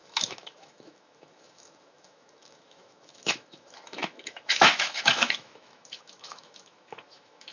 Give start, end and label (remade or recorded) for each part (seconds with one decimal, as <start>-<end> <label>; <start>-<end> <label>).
0.0-7.5 remade